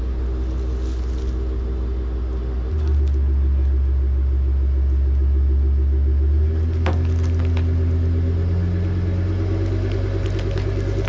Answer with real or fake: real